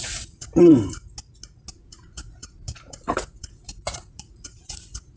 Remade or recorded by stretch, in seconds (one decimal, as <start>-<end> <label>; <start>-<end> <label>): 0.0-0.7 remade; 0.7-1.7 recorded; 1.7-5.2 remade